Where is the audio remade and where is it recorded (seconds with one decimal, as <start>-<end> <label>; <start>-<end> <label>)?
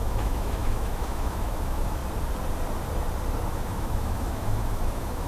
0.0-2.0 remade; 2.0-3.5 recorded; 3.5-5.3 remade